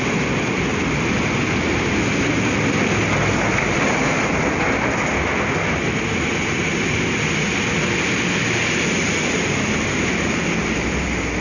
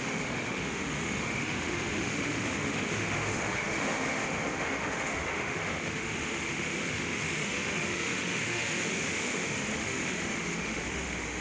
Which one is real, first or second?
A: first